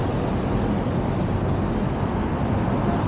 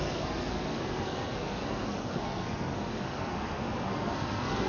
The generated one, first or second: second